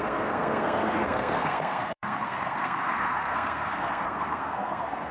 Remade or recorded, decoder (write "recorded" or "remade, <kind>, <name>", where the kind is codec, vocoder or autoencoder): remade, codec, SNAC